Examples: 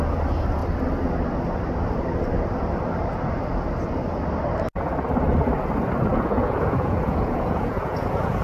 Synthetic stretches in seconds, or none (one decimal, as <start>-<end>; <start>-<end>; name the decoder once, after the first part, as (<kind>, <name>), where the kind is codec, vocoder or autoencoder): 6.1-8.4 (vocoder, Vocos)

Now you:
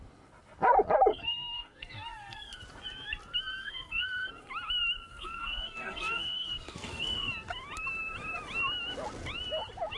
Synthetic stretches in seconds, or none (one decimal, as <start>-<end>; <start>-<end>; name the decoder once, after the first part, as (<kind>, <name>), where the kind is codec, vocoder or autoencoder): 1.1-2.6 (codec, SNAC); 3.6-4.3; 5.1-7.3

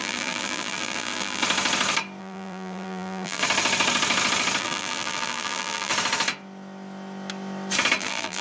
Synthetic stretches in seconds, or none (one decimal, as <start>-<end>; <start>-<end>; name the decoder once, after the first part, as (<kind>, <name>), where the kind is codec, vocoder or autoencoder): 0.0-1.4 (vocoder, BigVGAN v2); 2.2-3.4; 4.6-5.9; 8.0-8.4

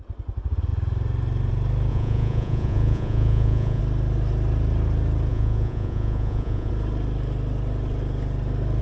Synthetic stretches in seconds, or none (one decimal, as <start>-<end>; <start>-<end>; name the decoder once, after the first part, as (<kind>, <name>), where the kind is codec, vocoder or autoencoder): 1.9-3.8 (vocoder, Vocos); 5.3-6.7

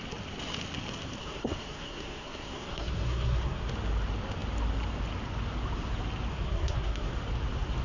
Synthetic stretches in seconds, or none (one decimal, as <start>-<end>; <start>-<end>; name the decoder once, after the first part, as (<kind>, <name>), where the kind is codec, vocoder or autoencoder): 1.2-3.7 (codec, SNAC); 6.3-7.1

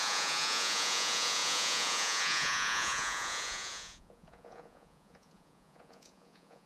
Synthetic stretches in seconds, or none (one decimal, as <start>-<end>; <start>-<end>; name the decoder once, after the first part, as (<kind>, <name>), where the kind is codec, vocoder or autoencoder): 0.0-6.7 (vocoder, Vocos)

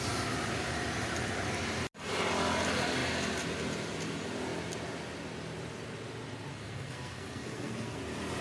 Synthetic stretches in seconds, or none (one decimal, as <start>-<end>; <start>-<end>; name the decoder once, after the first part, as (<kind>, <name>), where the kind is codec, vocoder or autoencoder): 6.5-8.0 (codec, SNAC)